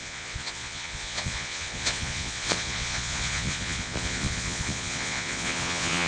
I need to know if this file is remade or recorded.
remade